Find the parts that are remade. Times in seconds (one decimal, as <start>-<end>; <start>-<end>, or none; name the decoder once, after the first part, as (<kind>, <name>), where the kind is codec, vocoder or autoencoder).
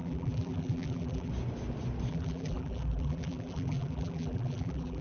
0.0-1.3 (vocoder, BigVGAN v2); 2.1-5.0